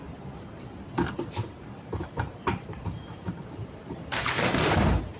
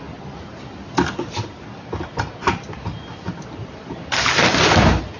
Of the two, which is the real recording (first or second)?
second